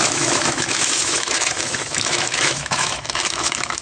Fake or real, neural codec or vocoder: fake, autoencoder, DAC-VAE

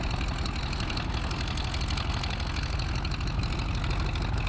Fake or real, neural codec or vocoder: real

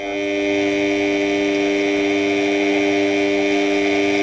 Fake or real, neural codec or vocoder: real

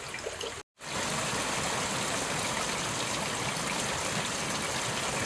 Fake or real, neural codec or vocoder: real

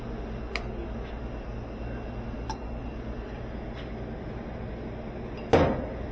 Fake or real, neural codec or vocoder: real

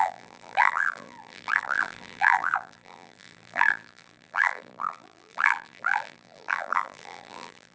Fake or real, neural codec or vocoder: fake, vocoder, BigVGAN v2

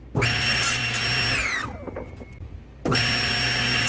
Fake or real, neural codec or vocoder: real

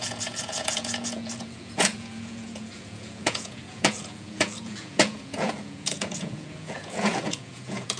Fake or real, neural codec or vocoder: fake, vocoder, Vocos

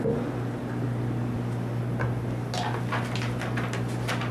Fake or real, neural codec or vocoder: real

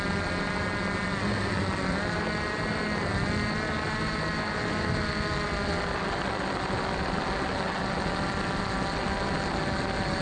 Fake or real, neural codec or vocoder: real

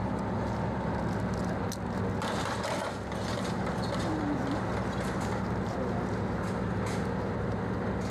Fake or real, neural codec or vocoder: real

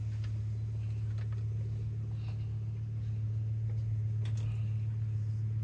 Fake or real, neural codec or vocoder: real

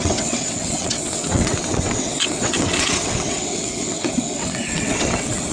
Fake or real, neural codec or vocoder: fake, vocoder, WaveNeXt